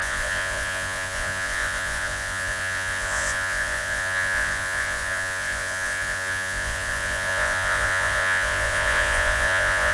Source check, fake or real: fake